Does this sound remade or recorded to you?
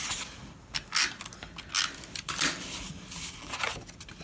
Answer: recorded